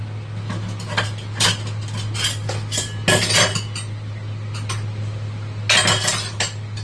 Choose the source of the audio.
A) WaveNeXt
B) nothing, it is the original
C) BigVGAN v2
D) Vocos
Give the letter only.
B